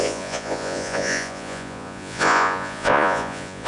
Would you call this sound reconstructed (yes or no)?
yes